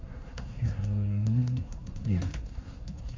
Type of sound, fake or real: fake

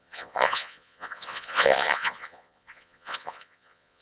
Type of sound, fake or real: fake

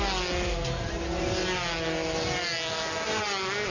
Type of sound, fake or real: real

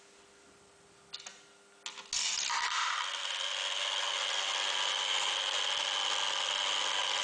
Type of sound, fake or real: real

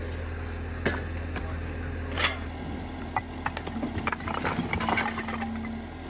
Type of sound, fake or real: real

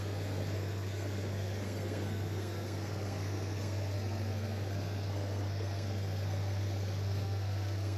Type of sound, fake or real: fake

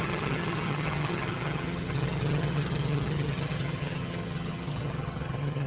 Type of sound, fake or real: fake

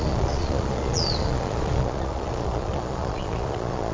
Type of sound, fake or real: fake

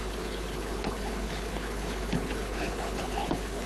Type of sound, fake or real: fake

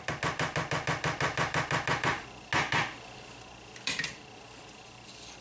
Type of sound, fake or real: real